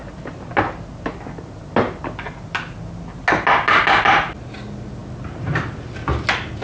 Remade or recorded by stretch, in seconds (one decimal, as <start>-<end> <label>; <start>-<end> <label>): 0.0-6.6 recorded